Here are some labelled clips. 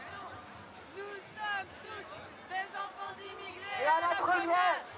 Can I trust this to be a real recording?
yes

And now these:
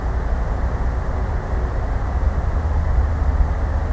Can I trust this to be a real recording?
yes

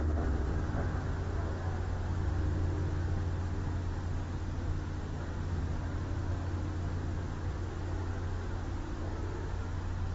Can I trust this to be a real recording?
yes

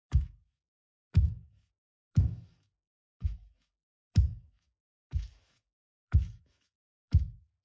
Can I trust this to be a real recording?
no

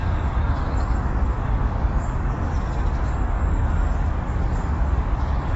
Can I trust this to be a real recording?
no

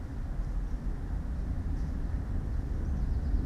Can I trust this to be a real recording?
yes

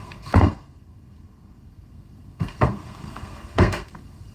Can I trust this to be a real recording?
no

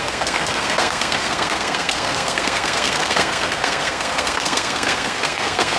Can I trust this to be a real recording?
no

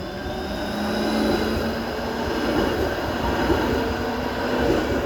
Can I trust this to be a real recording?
yes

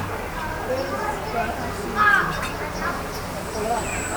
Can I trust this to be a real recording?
yes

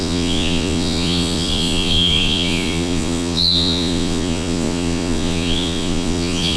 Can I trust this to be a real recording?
no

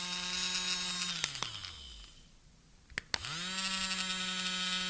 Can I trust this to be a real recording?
yes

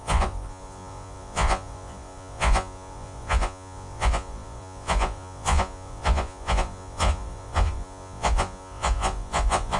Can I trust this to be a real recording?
no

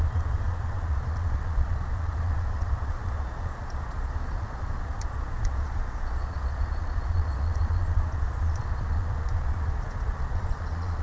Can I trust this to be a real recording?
no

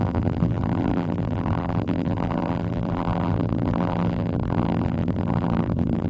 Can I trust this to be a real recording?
no